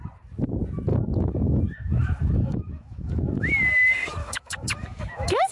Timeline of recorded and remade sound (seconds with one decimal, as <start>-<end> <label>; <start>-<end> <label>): 0.0-0.9 recorded; 0.9-3.5 remade; 3.5-4.2 recorded; 4.2-5.5 remade